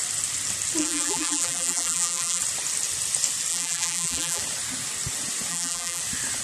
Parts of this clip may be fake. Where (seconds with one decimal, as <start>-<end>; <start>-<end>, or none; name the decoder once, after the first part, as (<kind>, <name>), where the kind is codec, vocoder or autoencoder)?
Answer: 0.8-2.4 (vocoder, BigVGAN v2); 3.5-4.4; 5.5-6.0